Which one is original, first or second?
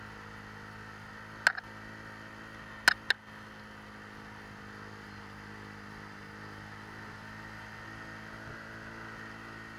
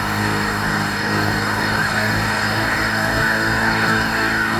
first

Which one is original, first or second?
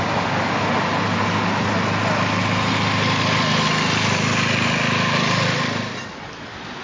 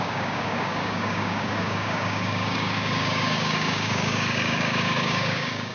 first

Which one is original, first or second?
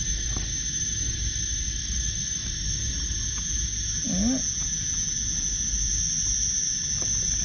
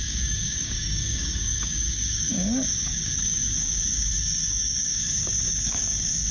first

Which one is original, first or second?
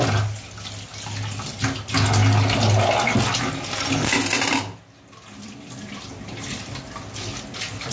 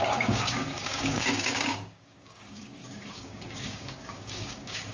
first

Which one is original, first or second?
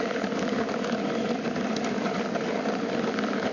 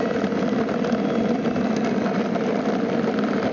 second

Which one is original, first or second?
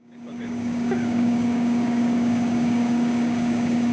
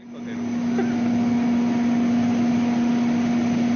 second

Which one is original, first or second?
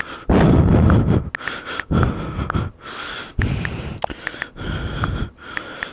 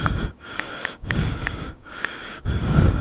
first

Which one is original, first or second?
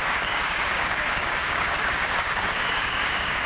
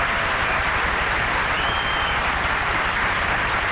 second